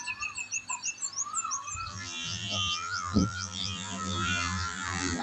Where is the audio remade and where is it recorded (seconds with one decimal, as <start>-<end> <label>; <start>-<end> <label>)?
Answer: 0.0-1.9 recorded; 1.9-5.2 remade